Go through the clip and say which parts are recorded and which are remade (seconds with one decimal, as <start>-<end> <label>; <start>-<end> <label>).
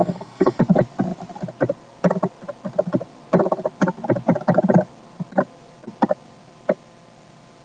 0.0-0.6 remade; 0.6-7.6 recorded